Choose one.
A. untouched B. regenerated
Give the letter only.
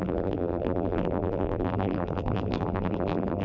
B